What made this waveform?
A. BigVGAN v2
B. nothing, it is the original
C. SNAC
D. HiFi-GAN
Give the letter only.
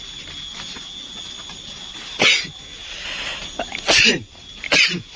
B